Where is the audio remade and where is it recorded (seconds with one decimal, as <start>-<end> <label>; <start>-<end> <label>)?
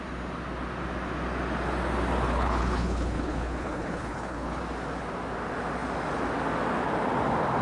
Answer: 0.0-2.3 recorded; 2.3-4.6 remade; 4.6-7.6 recorded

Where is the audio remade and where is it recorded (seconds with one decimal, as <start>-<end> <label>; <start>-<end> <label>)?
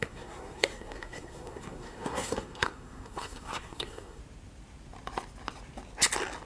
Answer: 0.0-4.2 remade; 4.2-6.5 recorded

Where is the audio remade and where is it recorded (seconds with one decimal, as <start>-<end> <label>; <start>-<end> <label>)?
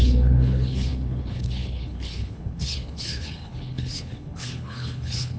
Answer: 0.0-5.4 remade